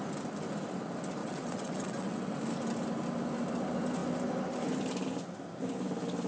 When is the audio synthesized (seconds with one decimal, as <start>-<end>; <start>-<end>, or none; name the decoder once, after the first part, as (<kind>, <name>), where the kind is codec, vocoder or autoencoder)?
1.2-2.4 (vocoder, WaveNeXt)